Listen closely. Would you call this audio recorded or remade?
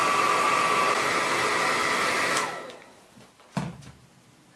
recorded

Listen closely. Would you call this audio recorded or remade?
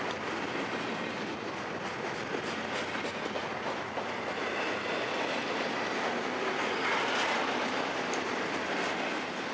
recorded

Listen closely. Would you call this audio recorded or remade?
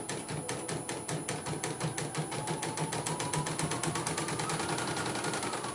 recorded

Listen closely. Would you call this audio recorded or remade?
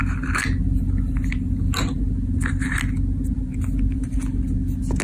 recorded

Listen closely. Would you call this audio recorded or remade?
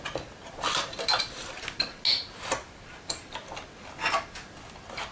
recorded